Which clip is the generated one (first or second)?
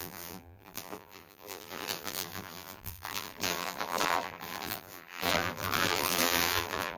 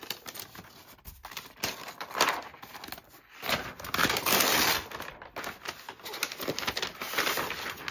first